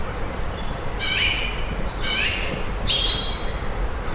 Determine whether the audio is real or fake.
real